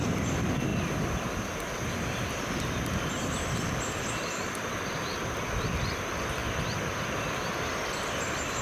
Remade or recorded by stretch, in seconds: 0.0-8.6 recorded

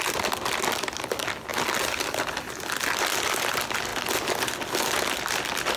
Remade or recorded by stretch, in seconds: 0.0-5.8 recorded

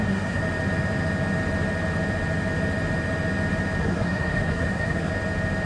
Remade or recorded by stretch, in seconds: 0.0-0.4 remade; 0.4-3.8 recorded; 3.8-5.1 remade; 5.1-5.7 recorded